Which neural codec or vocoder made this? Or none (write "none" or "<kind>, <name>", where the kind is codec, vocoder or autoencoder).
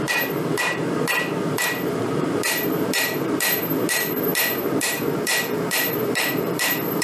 vocoder, BigVGAN v2